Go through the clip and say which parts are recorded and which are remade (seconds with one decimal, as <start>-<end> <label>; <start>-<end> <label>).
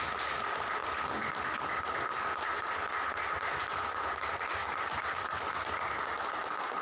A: 0.0-6.8 recorded